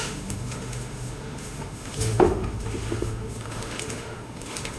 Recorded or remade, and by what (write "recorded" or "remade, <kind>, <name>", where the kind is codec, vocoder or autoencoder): remade, autoencoder, DAC-VAE